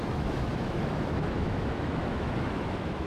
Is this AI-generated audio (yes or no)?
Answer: yes